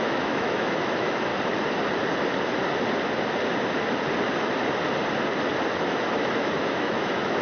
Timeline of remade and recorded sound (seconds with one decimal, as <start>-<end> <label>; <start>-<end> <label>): 0.0-1.3 remade; 1.3-5.7 recorded; 5.7-7.4 remade